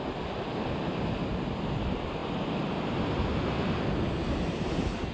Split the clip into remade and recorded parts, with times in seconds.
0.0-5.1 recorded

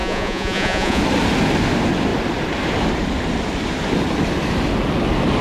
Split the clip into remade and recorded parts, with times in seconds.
0.0-1.0 remade; 1.0-5.4 recorded

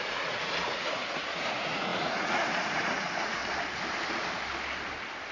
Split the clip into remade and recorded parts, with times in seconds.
0.0-3.4 remade; 3.4-5.3 recorded